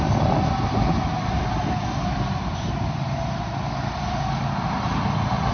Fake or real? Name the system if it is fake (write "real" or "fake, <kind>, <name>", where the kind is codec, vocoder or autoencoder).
fake, vocoder, BigVGAN v2